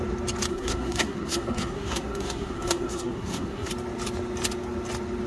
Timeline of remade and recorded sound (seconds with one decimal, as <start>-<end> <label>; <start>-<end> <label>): 0.0-0.5 recorded; 0.5-3.7 remade; 3.7-5.3 recorded